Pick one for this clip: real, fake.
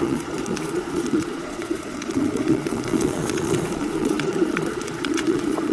fake